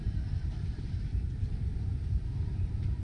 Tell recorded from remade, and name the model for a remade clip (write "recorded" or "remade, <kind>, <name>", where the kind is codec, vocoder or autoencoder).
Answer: remade, vocoder, BigVGAN v2